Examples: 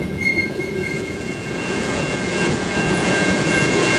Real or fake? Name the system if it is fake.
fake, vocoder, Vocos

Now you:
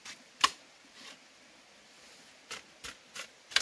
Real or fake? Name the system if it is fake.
real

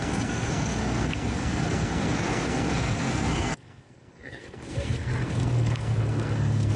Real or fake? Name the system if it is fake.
fake, codec, SNAC